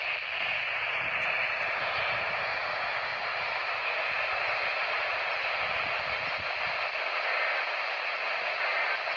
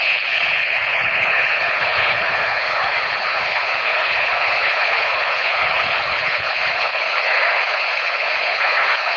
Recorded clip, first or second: first